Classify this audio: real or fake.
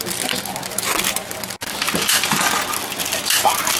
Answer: real